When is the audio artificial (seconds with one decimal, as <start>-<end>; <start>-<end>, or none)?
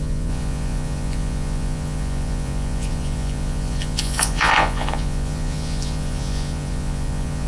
0.0-7.5